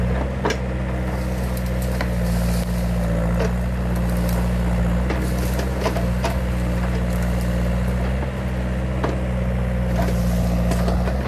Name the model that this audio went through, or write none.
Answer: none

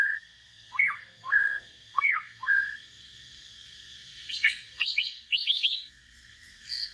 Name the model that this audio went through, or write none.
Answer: codec, SNAC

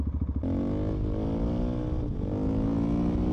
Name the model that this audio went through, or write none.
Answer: none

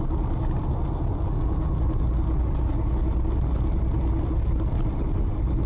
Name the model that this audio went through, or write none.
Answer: none